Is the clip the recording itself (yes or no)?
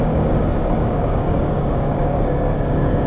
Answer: no